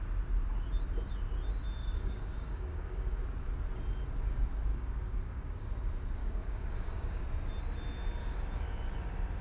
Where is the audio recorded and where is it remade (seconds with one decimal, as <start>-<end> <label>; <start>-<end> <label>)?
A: 0.0-1.8 recorded; 1.8-3.1 remade; 3.1-4.7 recorded; 4.7-5.7 remade; 5.7-6.2 recorded; 6.2-7.2 remade; 7.2-8.2 recorded; 8.2-8.8 remade; 8.8-9.4 recorded